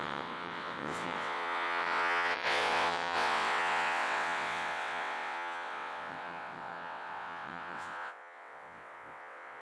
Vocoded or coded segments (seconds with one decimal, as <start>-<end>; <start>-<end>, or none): 0.0-9.6